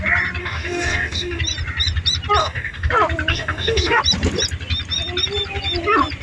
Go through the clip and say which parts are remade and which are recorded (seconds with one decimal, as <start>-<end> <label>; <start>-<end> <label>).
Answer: 0.0-0.4 recorded; 0.4-1.4 remade; 1.4-2.4 recorded; 2.4-2.9 remade; 2.9-3.3 recorded; 3.3-4.0 remade; 4.0-6.2 recorded